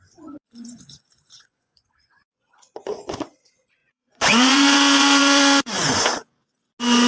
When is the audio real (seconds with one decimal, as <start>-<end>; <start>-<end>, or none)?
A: 6.1-7.1